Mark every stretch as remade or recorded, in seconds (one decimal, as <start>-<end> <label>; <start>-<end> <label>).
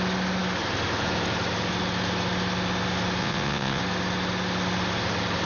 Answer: 0.0-3.2 recorded; 3.2-3.8 remade; 3.8-5.5 recorded